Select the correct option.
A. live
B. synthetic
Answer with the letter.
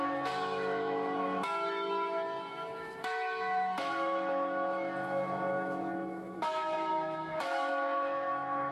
B